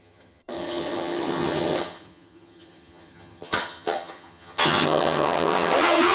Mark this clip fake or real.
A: fake